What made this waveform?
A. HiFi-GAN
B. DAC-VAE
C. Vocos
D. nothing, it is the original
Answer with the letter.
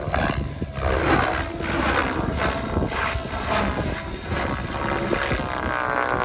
D